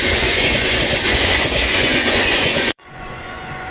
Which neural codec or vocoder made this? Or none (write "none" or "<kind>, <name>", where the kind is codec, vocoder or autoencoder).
vocoder, Vocos